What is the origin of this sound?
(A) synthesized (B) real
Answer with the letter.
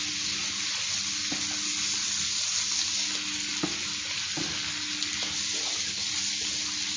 B